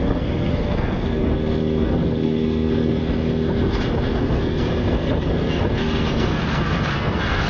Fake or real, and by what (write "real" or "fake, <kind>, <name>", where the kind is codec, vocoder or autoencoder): fake, codec, SNAC